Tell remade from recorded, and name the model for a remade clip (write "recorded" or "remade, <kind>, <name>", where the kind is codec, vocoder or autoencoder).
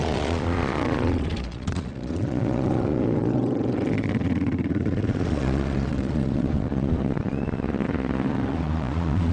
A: remade, vocoder, Vocos